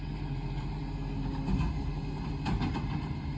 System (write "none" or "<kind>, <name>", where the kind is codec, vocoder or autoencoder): none